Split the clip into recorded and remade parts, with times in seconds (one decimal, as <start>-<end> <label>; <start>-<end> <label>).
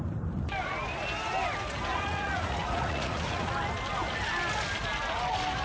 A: 0.0-1.9 recorded; 1.9-3.5 remade; 3.5-5.6 recorded